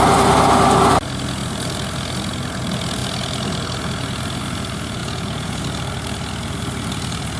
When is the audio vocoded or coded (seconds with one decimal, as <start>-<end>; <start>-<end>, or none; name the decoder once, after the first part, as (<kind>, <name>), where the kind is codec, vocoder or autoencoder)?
5.0-5.6 (vocoder, Vocos)

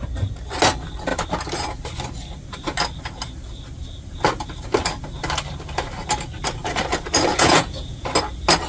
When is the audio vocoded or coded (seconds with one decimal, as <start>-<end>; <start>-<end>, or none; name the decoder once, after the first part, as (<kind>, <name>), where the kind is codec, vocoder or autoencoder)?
7.3-8.1 (vocoder, Vocos)

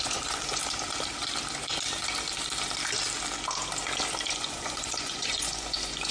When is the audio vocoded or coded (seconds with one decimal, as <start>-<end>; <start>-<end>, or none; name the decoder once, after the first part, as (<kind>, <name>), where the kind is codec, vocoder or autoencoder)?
0.0-0.6 (vocoder, Vocos); 4.3-6.1

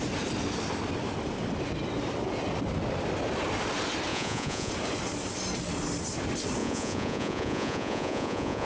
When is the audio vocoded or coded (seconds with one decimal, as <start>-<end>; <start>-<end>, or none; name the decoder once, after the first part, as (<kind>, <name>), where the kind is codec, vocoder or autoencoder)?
4.1-4.7 (vocoder, Vocos); 6.6-8.7

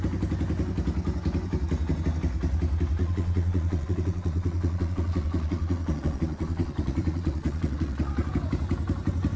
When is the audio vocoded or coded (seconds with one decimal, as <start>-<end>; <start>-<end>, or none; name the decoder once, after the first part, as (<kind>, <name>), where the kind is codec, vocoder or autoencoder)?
3.0-8.3 (vocoder, Vocos)

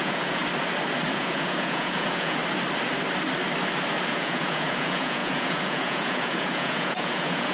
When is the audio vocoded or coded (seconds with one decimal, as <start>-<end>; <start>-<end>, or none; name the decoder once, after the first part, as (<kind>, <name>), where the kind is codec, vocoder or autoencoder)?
0.0-0.4 (vocoder, Vocos); 1.1-2.4; 4.1-7.5

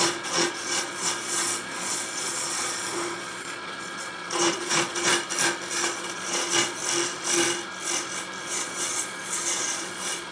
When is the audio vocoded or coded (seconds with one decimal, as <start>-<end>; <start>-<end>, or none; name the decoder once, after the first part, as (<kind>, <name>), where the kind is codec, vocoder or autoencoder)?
0.0-5.1 (vocoder, Vocos); 5.7-6.8; 8.4-10.3

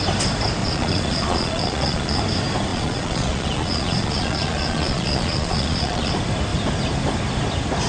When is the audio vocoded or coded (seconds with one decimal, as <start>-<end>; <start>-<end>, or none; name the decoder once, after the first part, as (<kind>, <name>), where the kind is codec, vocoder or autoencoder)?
0.6-2.2 (vocoder, Vocos); 2.7-6.1